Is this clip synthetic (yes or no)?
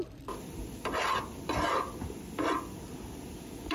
no